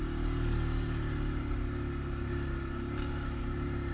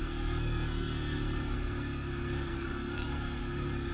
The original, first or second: first